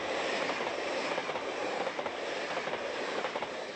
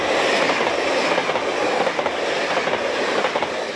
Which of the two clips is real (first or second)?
second